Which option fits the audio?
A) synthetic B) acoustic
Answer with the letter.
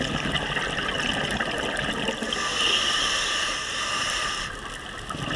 B